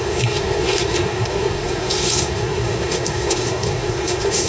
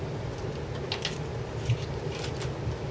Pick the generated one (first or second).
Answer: first